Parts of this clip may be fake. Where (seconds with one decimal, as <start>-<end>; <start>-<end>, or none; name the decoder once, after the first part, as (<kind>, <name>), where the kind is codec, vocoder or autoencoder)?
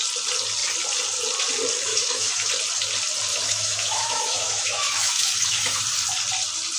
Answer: 1.9-2.5 (autoencoder, DAC-VAE); 3.3-5.8